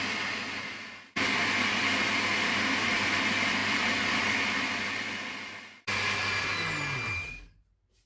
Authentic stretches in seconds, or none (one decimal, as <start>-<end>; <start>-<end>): 0.0-8.1

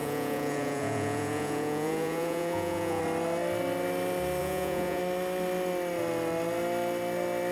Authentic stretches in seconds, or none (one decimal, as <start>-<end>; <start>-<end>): 3.0-4.4; 5.0-7.5